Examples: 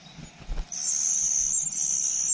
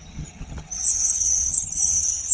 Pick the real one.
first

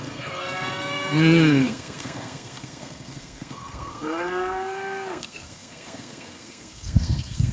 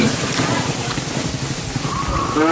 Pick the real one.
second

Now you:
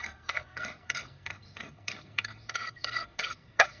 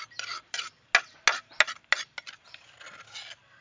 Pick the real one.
second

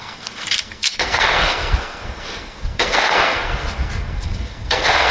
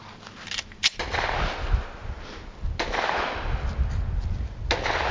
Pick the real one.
second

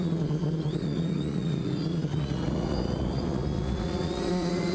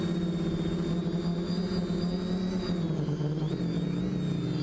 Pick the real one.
second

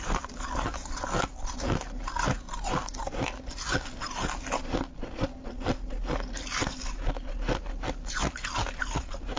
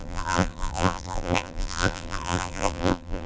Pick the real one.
first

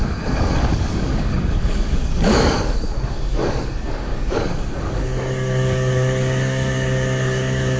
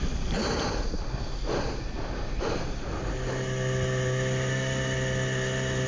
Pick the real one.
second